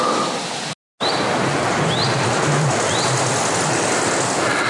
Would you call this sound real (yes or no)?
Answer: yes